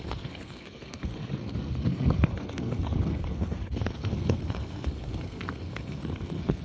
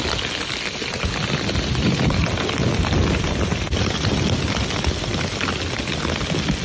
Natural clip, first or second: second